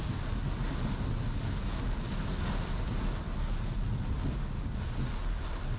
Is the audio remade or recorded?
recorded